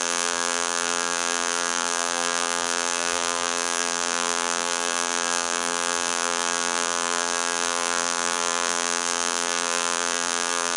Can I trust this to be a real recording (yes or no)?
no